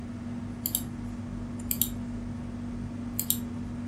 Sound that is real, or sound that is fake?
real